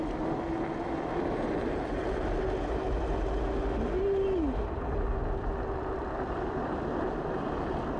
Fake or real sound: real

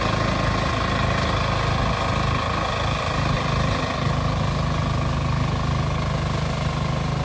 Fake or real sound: real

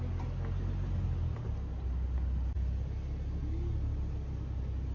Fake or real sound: real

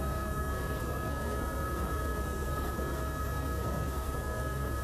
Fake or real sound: fake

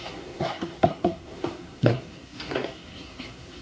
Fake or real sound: fake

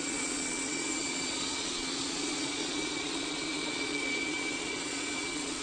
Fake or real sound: fake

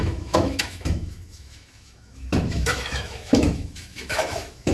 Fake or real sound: fake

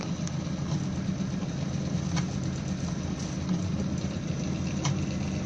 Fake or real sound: real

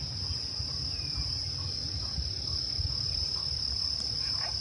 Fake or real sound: real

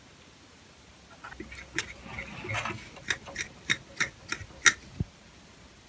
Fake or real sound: real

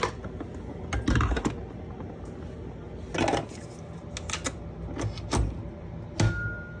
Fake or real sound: real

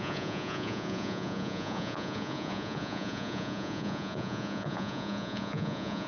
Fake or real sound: fake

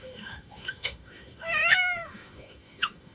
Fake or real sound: fake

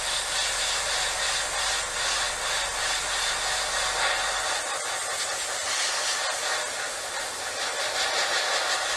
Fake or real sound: real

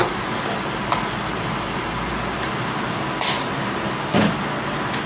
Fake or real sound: real